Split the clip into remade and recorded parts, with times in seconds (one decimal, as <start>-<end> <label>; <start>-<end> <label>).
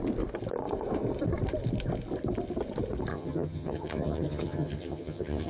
0.0-3.1 recorded; 3.1-5.5 remade